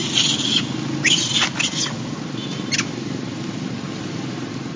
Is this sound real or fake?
real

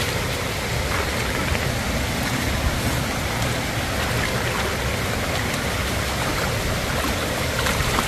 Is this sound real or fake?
real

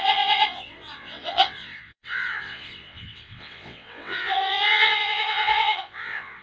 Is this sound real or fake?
fake